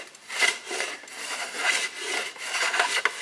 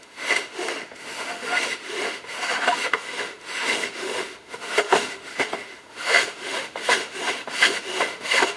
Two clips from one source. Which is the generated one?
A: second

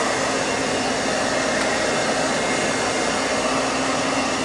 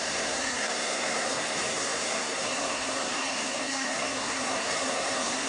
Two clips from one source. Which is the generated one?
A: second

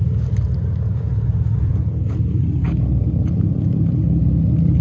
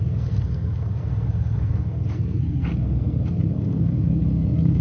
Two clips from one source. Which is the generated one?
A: second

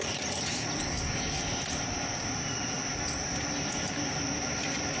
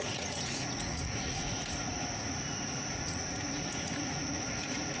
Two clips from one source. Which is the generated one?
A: second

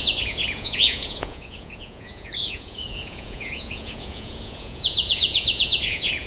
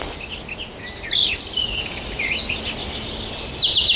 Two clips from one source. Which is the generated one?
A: first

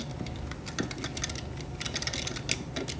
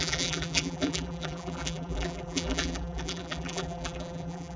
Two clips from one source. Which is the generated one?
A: second